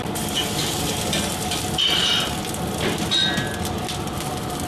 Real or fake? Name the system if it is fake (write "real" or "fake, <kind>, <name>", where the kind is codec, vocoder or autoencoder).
real